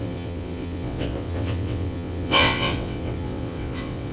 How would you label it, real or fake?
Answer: fake